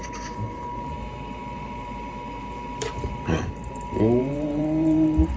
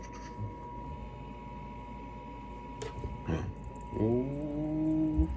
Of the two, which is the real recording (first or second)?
second